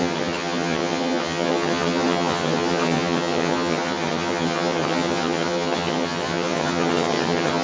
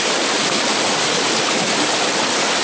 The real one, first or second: second